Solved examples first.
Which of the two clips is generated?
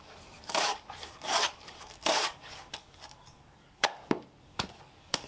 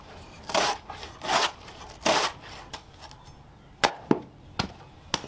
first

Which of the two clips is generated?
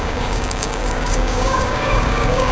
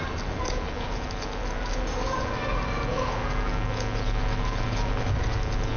first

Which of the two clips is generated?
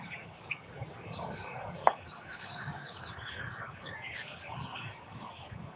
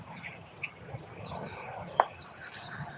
first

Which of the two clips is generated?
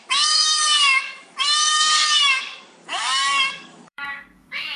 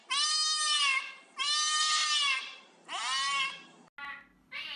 first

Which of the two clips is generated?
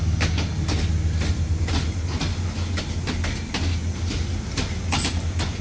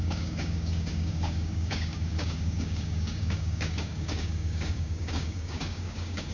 second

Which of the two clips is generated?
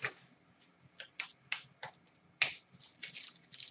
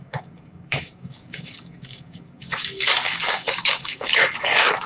second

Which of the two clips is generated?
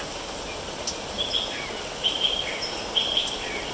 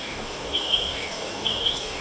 second